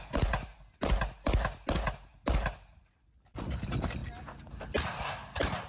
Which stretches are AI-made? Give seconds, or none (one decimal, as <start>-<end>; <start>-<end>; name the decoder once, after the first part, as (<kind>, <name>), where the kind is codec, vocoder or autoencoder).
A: none